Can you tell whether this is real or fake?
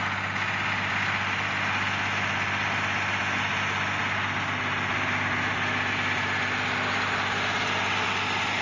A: real